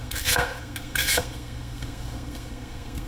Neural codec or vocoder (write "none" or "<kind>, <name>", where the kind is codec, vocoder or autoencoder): codec, SNAC